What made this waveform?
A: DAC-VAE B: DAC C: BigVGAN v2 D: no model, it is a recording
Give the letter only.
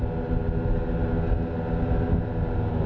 D